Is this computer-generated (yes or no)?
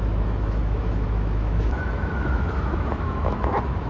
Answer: yes